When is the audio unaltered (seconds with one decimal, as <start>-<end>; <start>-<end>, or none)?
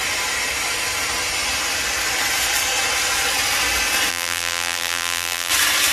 0.0-4.1; 5.5-5.9